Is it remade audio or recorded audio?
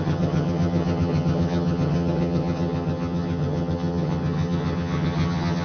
remade